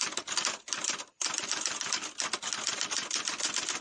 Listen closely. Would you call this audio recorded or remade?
recorded